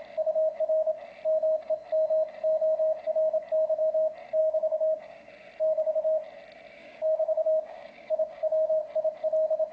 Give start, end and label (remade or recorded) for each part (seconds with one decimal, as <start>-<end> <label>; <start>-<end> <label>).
0.0-4.4 recorded; 4.4-5.3 remade; 5.3-6.8 recorded; 6.8-8.8 remade; 8.8-9.7 recorded